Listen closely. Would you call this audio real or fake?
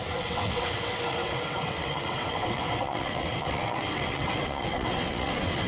fake